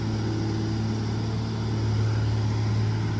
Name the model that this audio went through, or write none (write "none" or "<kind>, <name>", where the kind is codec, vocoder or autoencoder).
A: none